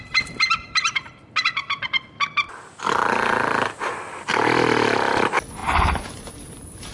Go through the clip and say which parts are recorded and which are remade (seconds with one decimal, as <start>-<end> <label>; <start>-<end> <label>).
0.0-6.9 recorded